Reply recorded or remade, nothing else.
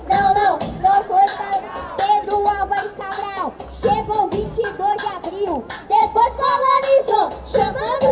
recorded